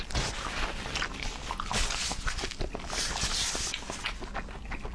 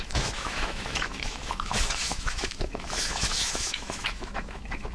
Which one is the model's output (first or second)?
second